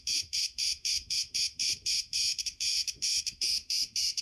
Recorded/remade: remade